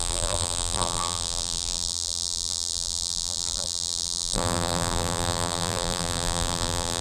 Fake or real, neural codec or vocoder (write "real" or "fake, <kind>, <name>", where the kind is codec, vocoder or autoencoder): fake, vocoder, BigVGAN v2